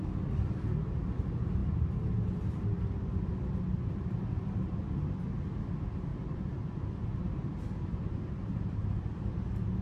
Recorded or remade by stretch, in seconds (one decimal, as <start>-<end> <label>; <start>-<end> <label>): 0.0-6.1 recorded; 6.1-9.3 remade; 9.3-9.8 recorded